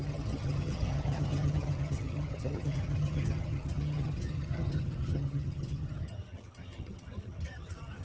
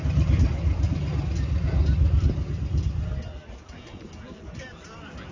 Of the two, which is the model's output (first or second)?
first